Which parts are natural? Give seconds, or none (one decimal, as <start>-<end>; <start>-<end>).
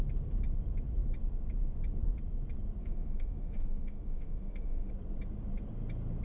0.0-2.8; 4.9-6.2